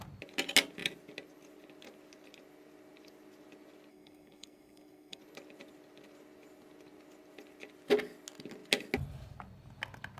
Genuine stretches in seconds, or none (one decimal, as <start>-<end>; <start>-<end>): 0.0-3.9; 5.2-10.2